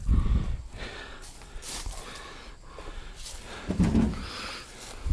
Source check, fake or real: real